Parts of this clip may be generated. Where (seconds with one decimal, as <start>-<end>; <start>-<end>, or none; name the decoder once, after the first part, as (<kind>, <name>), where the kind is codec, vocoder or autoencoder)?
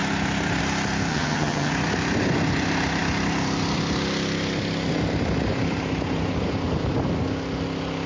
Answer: 1.1-1.7 (vocoder, HiFi-GAN)